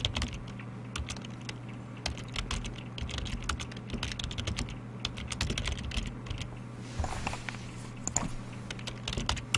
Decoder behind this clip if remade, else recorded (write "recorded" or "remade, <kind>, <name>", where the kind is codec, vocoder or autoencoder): recorded